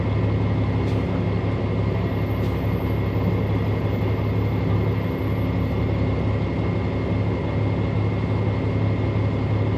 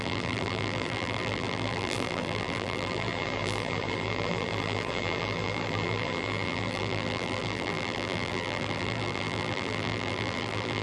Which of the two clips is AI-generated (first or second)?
second